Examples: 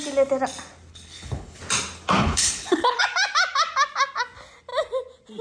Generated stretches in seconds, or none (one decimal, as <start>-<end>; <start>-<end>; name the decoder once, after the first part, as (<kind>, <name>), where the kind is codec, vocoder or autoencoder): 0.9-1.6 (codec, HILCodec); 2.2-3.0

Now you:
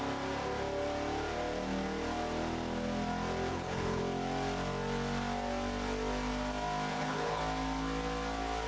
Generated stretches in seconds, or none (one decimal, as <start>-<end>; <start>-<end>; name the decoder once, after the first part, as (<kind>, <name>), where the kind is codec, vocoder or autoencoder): 3.5-4.0 (codec, HILCodec); 6.9-7.4

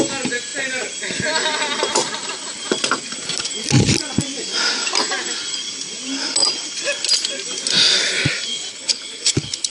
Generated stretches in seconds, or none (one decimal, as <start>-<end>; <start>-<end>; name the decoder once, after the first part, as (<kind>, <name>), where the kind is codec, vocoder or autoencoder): 8.7-9.7 (codec, HILCodec)

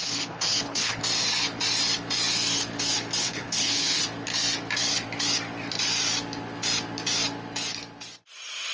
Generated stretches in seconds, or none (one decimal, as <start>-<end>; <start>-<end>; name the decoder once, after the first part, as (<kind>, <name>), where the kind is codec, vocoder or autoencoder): 0.0-1.0 (codec, HILCodec); 3.2-4.0

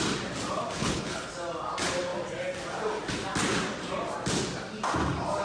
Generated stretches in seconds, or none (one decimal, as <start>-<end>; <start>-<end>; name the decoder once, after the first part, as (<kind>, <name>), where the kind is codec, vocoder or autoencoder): 0.8-1.3 (codec, HILCodec)

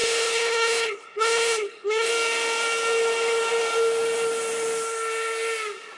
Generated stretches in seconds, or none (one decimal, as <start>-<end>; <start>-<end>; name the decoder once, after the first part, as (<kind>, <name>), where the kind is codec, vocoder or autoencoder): 0.0-2.1 (codec, HILCodec)

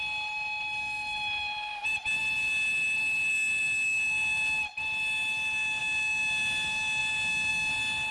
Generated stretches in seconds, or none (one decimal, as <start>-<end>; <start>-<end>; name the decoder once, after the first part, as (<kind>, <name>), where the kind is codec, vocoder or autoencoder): none

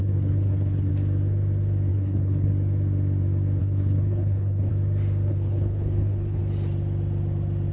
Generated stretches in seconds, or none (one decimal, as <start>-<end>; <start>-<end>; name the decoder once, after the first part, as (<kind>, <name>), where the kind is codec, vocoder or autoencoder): 0.0-0.9 (codec, HILCodec); 1.9-2.5; 3.6-4.7; 5.3-6.4